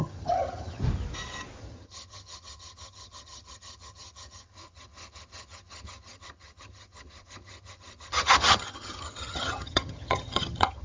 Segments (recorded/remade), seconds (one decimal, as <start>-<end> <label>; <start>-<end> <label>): 0.0-0.8 remade; 0.8-1.6 recorded; 1.6-10.8 remade